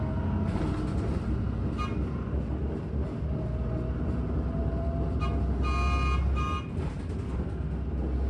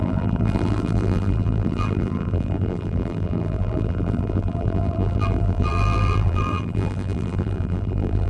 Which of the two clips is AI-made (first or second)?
second